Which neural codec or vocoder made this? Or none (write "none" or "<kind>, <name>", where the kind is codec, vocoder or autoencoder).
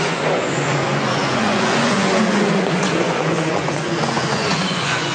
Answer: vocoder, Vocos